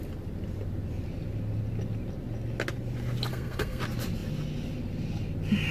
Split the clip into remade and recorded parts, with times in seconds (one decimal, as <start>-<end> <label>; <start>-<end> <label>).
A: 0.0-3.3 recorded; 3.3-3.8 remade; 3.8-5.7 recorded